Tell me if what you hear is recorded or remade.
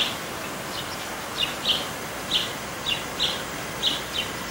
recorded